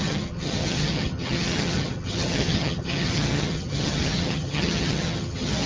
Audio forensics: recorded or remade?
remade